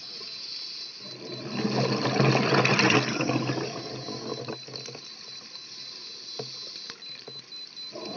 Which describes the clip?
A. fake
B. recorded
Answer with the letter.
B